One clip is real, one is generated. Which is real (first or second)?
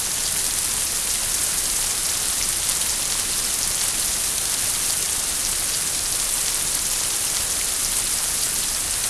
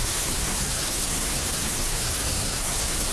first